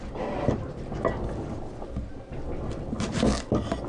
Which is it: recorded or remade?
recorded